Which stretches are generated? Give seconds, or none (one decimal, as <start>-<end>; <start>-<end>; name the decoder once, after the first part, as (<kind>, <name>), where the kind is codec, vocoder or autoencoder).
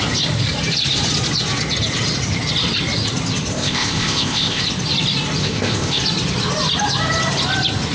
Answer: 3.5-4.6 (codec, ZipCodec); 5.4-6.0